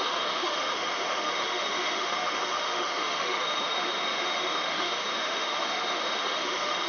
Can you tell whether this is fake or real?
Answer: fake